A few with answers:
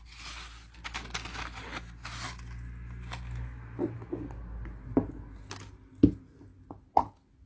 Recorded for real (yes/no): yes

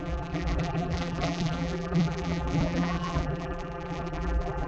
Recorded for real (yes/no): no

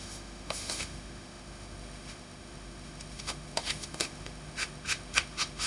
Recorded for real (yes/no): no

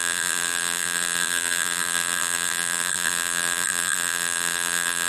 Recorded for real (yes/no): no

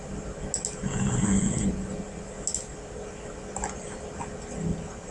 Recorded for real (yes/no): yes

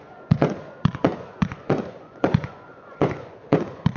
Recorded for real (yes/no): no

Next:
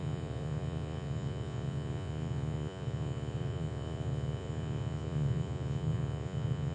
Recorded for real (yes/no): no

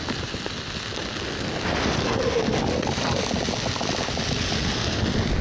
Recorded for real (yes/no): yes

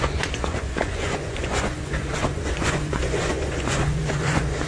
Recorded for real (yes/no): no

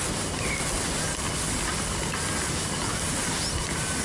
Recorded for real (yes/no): yes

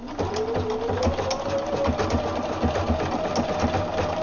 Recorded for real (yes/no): yes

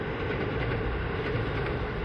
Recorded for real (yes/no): yes